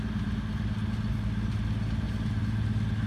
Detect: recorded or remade recorded